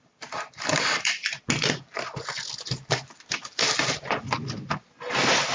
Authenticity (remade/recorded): recorded